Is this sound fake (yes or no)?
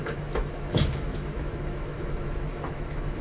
yes